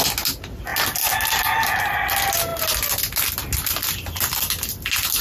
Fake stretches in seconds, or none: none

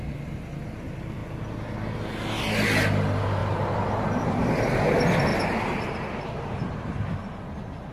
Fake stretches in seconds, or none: 3.4-4.5; 5.3-7.5

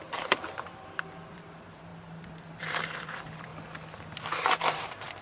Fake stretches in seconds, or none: 0.0-1.9; 2.6-3.5; 4.4-5.2

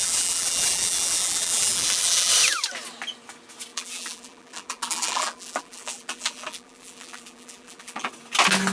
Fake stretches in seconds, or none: 0.0-2.3; 3.7-8.1